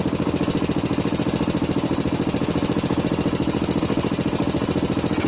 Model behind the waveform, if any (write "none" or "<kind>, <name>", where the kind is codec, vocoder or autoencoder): none